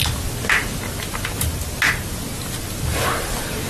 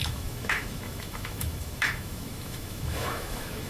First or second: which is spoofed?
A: second